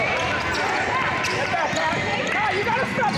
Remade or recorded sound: recorded